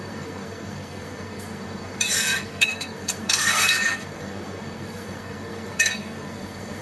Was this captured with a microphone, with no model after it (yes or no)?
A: no